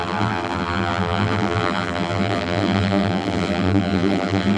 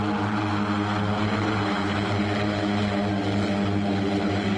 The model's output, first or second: first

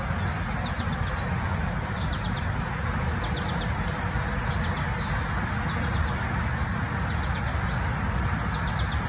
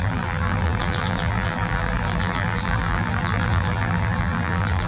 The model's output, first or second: second